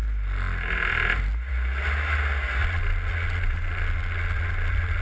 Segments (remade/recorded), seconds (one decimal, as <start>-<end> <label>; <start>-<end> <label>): 0.0-2.6 recorded; 2.6-5.0 remade